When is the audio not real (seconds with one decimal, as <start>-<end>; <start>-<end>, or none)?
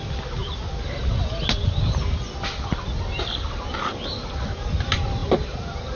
none